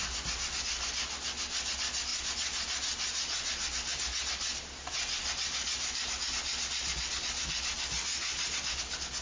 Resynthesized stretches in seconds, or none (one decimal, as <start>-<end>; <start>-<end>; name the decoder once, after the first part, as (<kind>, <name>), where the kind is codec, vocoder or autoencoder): none